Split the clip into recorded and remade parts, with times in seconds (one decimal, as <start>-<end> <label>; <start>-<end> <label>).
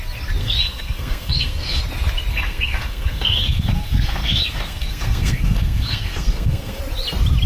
0.0-0.4 recorded; 0.4-1.8 remade; 1.8-2.3 recorded; 2.3-6.8 remade; 6.8-7.5 recorded